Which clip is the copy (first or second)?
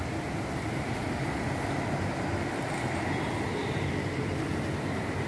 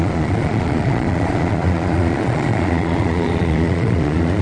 second